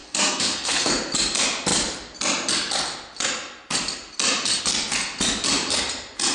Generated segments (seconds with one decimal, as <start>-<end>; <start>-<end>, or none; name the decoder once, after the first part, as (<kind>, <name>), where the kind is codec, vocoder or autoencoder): 0.0-0.9 (codec, SNAC)